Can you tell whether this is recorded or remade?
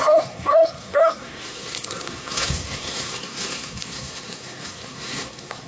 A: remade